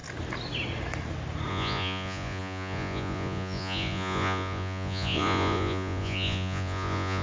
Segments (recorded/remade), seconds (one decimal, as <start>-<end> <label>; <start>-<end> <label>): 0.0-1.5 recorded; 1.5-7.2 remade